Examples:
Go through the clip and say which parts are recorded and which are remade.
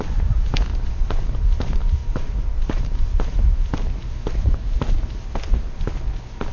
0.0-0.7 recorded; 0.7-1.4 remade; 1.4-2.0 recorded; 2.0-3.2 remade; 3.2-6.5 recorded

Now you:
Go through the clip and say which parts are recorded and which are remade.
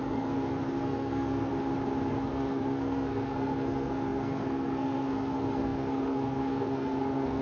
0.0-1.5 remade; 1.5-2.1 recorded; 2.1-7.4 remade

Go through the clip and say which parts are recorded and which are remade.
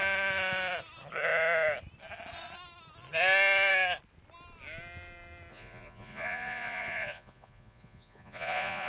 0.0-5.5 recorded; 5.5-8.9 remade